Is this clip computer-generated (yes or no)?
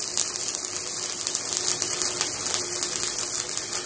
no